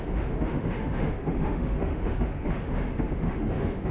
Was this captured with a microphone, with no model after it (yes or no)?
no